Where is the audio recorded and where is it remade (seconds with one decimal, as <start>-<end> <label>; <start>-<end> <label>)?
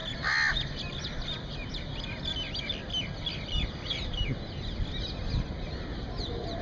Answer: 0.0-6.6 recorded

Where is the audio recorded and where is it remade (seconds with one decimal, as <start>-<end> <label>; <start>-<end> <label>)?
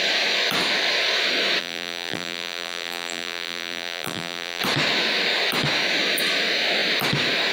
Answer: 0.0-1.6 recorded; 1.6-4.6 remade; 4.6-7.5 recorded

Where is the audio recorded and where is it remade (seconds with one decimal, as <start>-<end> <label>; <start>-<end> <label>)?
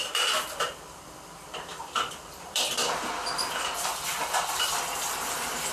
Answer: 0.0-0.7 remade; 0.7-1.7 recorded; 1.7-5.0 remade; 5.0-5.7 recorded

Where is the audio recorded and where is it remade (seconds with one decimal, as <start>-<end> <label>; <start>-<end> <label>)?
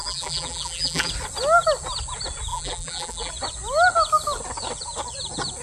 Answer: 0.0-1.1 remade; 1.1-2.5 recorded; 2.5-3.3 remade; 3.3-5.6 recorded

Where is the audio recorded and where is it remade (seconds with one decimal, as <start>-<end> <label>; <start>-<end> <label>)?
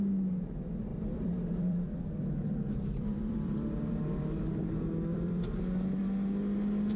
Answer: 0.0-0.9 recorded; 0.9-4.3 remade; 4.3-5.1 recorded; 5.1-5.6 remade; 5.6-7.0 recorded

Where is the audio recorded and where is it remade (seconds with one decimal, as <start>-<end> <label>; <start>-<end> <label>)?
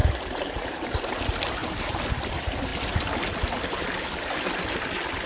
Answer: 0.0-1.1 remade; 1.1-1.6 recorded; 1.6-2.1 remade; 2.1-5.3 recorded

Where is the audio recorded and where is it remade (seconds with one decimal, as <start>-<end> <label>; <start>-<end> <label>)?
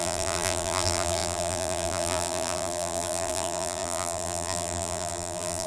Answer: 0.0-5.7 remade